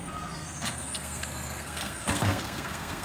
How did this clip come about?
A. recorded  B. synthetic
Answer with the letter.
B